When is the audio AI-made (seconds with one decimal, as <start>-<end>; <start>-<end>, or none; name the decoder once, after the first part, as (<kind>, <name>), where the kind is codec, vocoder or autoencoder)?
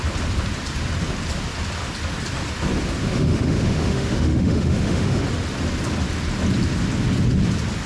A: 3.0-5.2 (autoencoder, DAC-VAE)